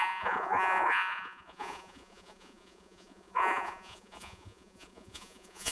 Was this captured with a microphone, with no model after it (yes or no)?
no